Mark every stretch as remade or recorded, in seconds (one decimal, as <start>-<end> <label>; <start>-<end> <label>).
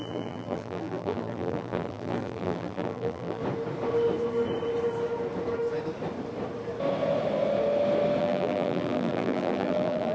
0.0-3.4 remade; 3.4-8.2 recorded; 8.2-10.1 remade